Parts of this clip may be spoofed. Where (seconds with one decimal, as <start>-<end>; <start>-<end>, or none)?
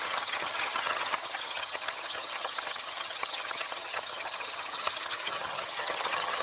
0.0-6.4